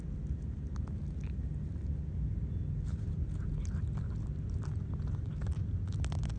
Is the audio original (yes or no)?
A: yes